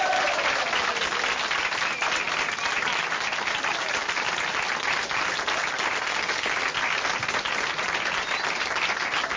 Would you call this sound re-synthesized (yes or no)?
no